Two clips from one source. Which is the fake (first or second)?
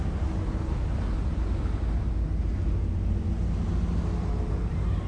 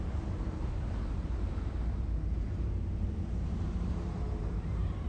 second